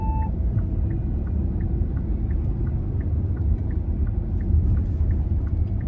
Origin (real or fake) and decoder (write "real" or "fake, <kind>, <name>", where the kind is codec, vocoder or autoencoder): real